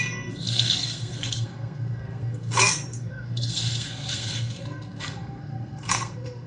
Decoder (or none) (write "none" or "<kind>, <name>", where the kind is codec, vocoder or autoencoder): codec, SNAC